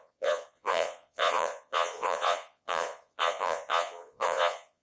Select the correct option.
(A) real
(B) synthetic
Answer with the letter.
B